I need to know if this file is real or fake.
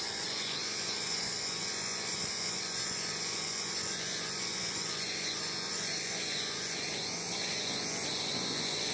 fake